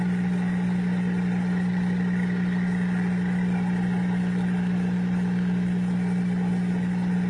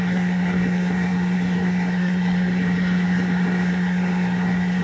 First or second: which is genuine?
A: first